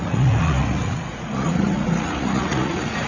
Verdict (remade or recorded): remade